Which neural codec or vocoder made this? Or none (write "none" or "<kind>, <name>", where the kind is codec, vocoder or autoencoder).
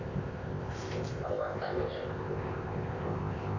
codec, ZipCodec